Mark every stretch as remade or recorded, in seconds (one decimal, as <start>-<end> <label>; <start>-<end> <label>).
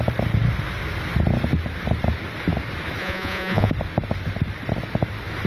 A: 0.0-3.0 recorded; 3.0-3.7 remade; 3.7-5.5 recorded